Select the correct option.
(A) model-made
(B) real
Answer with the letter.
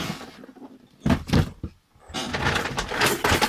B